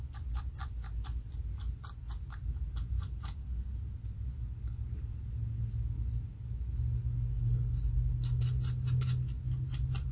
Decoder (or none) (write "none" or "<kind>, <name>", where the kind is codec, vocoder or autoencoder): none